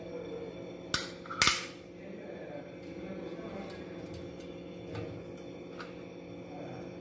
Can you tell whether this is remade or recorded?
recorded